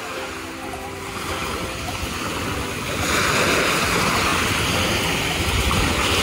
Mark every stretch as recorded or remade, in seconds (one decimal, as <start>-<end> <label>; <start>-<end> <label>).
0.0-6.2 recorded